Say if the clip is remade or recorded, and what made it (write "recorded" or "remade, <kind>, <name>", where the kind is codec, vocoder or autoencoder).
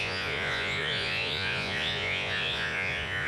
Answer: remade, vocoder, Vocos